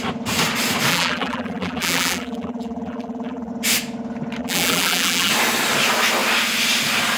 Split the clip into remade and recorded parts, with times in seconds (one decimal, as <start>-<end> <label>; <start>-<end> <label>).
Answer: 0.0-0.9 recorded; 0.9-3.5 remade; 3.5-4.4 recorded; 4.4-5.3 remade; 5.3-7.2 recorded